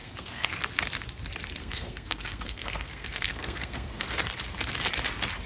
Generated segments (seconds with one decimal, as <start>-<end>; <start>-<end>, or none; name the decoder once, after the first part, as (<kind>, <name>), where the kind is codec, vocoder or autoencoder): 0.0-0.6 (codec, SNAC); 1.6-4.3